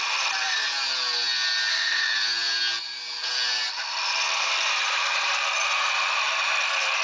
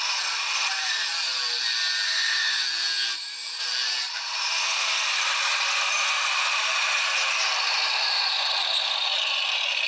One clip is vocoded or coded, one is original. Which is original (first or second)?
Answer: first